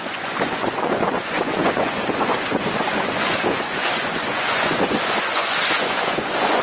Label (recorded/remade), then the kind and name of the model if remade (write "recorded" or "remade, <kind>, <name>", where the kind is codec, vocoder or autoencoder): remade, vocoder, Vocos